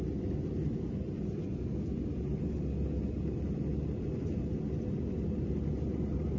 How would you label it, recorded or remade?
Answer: recorded